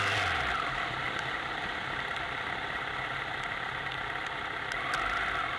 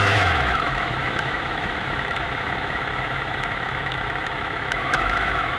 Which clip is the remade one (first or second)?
second